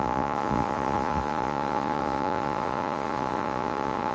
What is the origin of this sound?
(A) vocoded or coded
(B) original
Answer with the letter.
A